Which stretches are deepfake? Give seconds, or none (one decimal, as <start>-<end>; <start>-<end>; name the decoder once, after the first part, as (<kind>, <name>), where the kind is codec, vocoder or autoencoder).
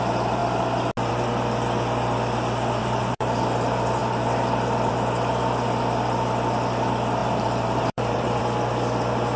2.8-3.4 (vocoder, BigVGAN v2); 7.2-8.4